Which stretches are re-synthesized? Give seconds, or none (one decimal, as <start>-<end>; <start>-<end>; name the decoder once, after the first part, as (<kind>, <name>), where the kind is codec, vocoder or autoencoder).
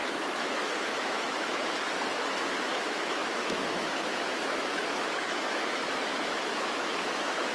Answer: 0.0-7.5 (autoencoder, DAC-VAE)